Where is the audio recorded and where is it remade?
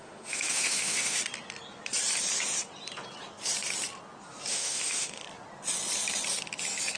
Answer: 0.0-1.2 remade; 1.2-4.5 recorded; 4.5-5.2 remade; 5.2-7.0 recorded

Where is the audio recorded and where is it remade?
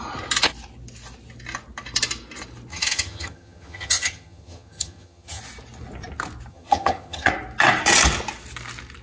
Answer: 0.0-2.7 recorded; 2.7-5.4 remade; 5.4-6.5 recorded; 6.5-7.3 remade; 7.3-9.0 recorded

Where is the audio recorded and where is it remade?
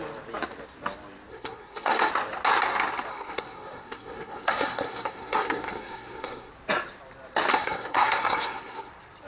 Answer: 0.0-1.3 recorded; 1.3-2.1 remade; 2.1-3.1 recorded; 3.1-6.5 remade; 6.5-7.5 recorded; 7.5-8.9 remade; 8.9-9.3 recorded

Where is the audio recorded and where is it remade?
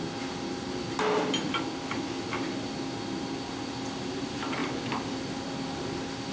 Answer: 0.0-4.6 recorded; 4.6-5.5 remade; 5.5-6.3 recorded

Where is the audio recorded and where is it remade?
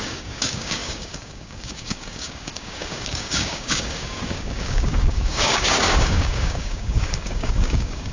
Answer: 0.0-8.1 remade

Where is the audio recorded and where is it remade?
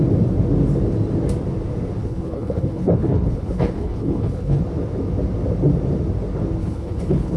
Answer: 0.0-2.0 recorded; 2.0-4.6 remade; 4.6-6.6 recorded; 6.6-7.4 remade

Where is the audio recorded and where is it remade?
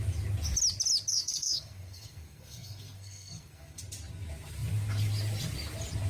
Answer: 0.0-1.1 recorded; 1.1-3.8 remade; 3.8-6.1 recorded